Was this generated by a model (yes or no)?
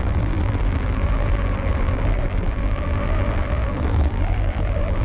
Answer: yes